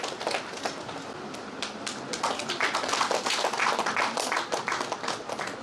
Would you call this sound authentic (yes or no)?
yes